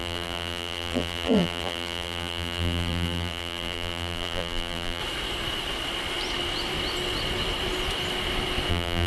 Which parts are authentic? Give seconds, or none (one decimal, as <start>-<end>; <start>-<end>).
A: 5.0-8.7